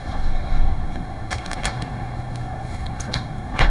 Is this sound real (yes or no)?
no